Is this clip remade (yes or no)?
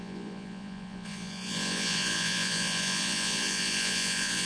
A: yes